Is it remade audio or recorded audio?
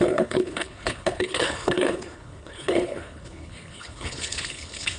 remade